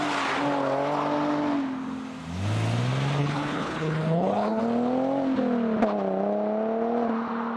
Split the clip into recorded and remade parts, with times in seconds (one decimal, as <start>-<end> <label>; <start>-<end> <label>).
0.0-3.2 recorded; 3.2-4.6 remade; 4.6-7.6 recorded